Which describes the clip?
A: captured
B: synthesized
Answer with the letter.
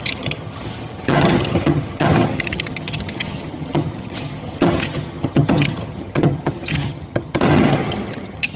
B